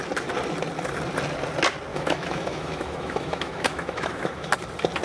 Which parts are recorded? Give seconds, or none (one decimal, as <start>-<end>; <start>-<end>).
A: 0.0-1.9; 4.5-5.0